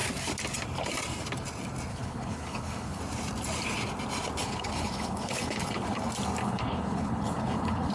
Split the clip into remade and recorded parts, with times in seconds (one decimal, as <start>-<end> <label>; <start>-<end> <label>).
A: 0.0-1.9 recorded; 1.9-3.0 remade; 3.0-4.4 recorded; 4.4-6.0 remade; 6.0-6.4 recorded; 6.4-7.9 remade